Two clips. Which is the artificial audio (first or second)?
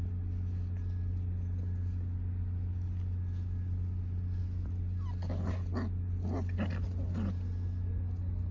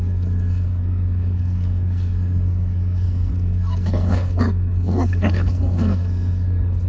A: second